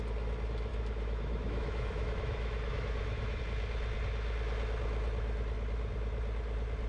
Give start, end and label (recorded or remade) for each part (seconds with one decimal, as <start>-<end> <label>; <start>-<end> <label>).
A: 0.0-0.7 recorded; 0.7-3.4 remade; 3.4-6.9 recorded